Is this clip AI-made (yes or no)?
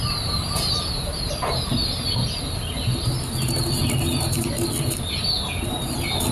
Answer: no